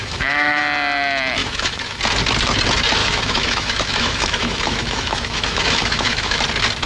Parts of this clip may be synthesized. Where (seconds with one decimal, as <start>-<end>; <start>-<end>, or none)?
0.0-0.6; 1.4-2.0; 3.0-6.4